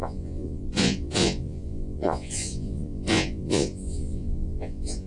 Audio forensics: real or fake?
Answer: fake